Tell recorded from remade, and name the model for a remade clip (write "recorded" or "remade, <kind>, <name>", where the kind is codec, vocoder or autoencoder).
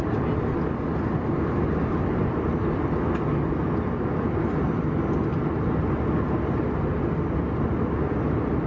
recorded